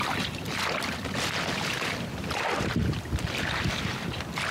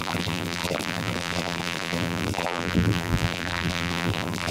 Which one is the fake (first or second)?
second